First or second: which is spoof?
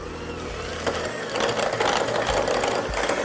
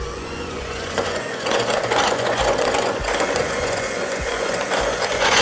second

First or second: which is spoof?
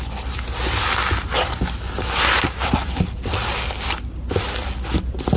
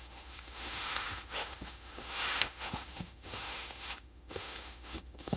second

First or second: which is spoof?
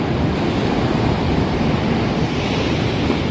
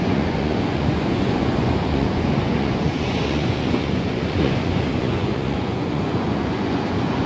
second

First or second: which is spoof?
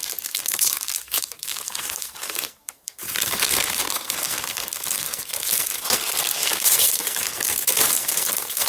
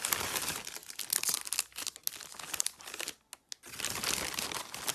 first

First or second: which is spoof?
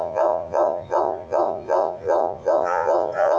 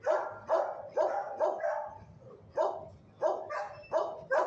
first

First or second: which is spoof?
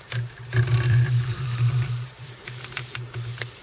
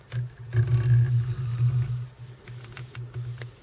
first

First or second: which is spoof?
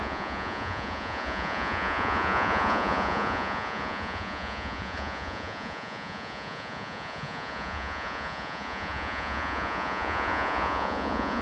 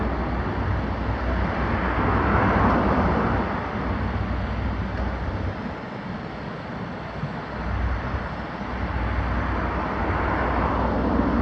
first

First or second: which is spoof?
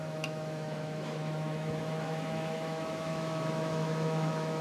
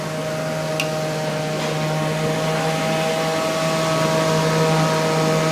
first